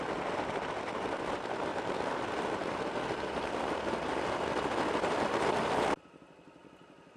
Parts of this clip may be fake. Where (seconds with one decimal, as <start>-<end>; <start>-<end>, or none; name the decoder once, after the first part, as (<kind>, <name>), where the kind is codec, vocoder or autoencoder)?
none